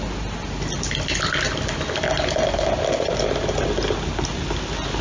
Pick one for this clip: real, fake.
real